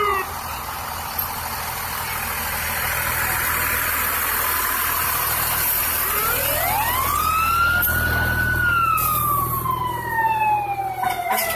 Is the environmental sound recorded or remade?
recorded